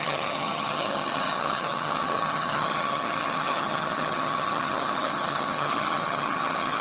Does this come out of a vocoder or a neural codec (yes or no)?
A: yes